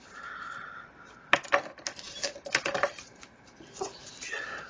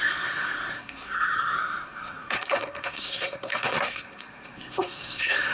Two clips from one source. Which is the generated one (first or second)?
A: second